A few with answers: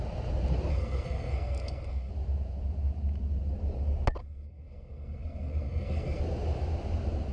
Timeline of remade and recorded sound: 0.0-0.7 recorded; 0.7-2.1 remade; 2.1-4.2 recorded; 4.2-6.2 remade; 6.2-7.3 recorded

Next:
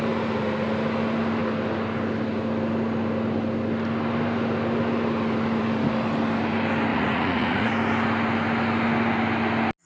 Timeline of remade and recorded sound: 0.0-6.9 recorded; 6.9-7.7 remade; 7.7-9.8 recorded

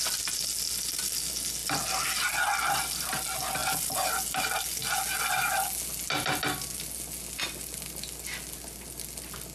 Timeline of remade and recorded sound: 0.0-9.5 recorded

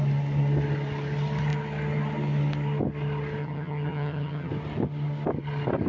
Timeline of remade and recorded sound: 0.0-3.4 recorded; 3.4-4.5 remade; 4.5-5.9 recorded

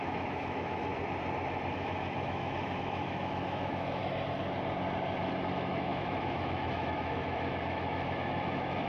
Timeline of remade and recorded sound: 0.0-0.9 remade; 0.9-1.7 recorded; 1.7-4.0 remade; 4.0-5.2 recorded; 5.2-8.9 remade

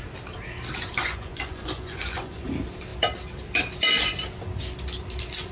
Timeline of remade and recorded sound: 0.0-1.0 recorded; 1.0-2.5 remade; 2.5-5.5 recorded